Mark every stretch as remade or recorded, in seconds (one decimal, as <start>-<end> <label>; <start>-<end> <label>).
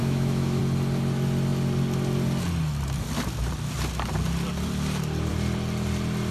0.0-0.6 remade; 0.6-6.3 recorded